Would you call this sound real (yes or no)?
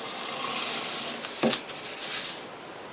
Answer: yes